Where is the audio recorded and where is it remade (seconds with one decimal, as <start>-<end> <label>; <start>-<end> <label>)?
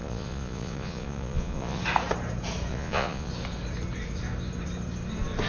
0.0-1.8 remade; 1.8-2.7 recorded; 2.7-3.3 remade; 3.3-5.5 recorded